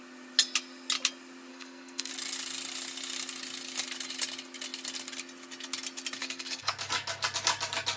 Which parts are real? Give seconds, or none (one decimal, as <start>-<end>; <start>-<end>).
0.0-1.5; 2.1-6.2; 6.7-8.0